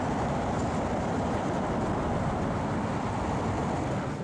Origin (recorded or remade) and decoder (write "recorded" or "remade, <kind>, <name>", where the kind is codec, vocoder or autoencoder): recorded